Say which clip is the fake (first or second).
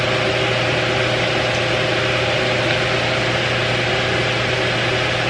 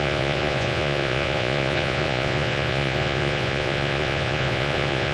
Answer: second